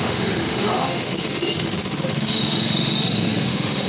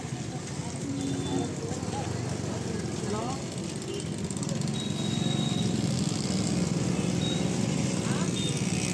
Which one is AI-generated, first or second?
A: first